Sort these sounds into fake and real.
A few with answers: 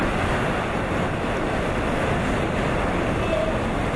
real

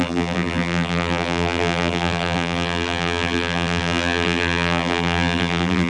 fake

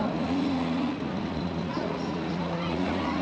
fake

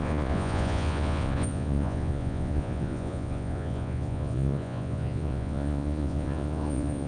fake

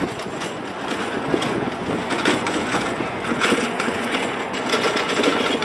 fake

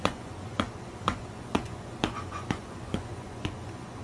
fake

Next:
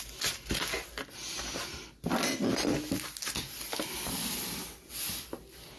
real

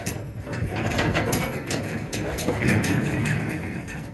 fake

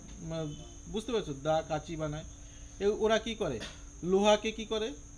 real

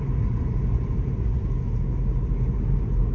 real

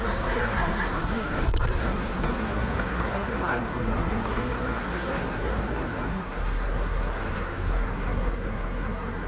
fake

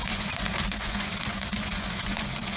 fake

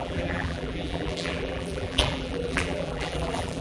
fake